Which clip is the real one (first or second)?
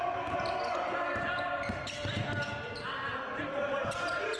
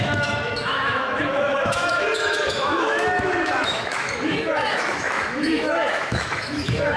first